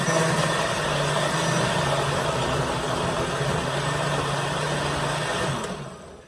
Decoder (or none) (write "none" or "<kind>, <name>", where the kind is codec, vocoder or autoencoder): none